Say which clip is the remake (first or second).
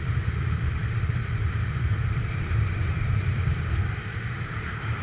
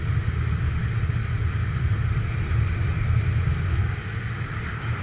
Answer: first